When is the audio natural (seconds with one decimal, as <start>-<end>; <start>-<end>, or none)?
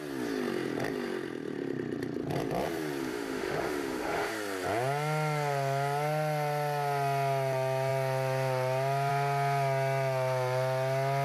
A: 0.0-3.0; 4.3-11.2